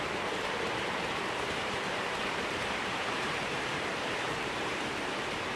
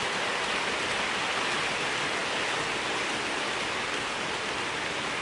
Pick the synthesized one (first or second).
first